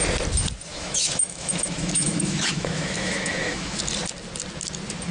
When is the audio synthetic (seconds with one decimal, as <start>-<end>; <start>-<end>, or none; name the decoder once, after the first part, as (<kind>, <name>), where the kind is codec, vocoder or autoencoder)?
0.7-3.8 (autoencoder, DAC-VAE)